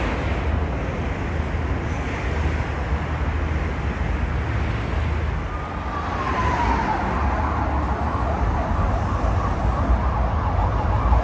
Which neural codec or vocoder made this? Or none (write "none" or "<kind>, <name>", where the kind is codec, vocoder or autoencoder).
none